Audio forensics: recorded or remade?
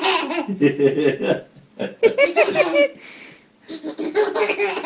recorded